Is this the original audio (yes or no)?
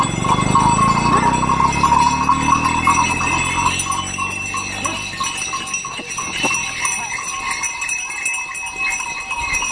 yes